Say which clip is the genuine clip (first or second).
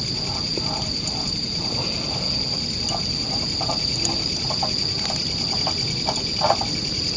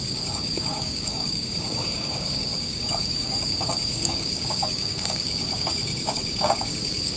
first